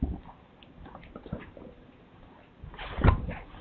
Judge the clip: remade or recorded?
recorded